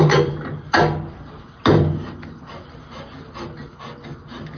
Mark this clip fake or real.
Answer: real